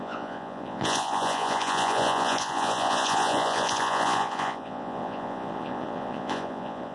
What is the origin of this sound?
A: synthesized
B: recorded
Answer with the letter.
A